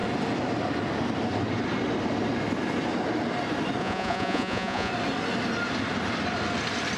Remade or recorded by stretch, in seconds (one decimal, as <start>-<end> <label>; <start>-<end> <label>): 0.0-3.8 recorded; 3.8-4.9 remade; 4.9-7.0 recorded